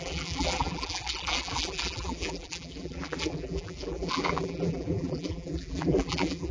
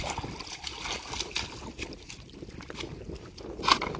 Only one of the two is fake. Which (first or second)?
first